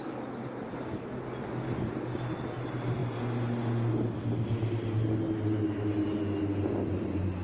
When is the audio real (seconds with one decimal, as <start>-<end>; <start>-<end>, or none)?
0.0-7.4